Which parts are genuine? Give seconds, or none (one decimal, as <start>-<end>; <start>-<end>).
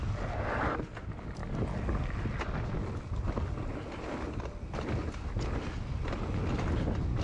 0.0-7.2